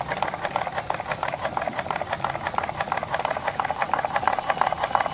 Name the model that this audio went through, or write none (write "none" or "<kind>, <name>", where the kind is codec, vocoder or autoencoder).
vocoder, BigVGAN v2